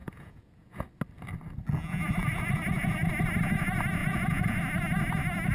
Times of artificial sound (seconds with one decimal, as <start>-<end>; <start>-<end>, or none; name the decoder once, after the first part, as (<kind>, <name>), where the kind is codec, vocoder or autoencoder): 0.0-0.8 (vocoder, Vocos); 2.2-3.1; 4.0-4.6